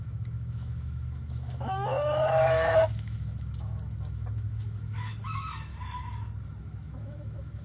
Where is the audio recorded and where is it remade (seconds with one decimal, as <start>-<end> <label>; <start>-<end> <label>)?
0.0-5.7 remade; 5.7-6.6 recorded; 6.6-7.6 remade